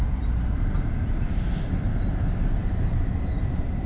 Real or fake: real